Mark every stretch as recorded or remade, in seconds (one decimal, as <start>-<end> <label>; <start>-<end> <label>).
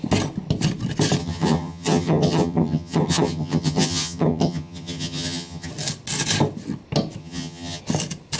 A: 0.0-1.2 recorded; 1.2-5.7 remade; 5.7-7.2 recorded; 7.2-7.8 remade; 7.8-8.4 recorded